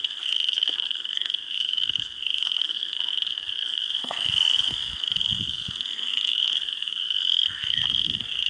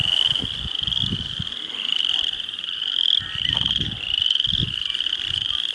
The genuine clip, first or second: second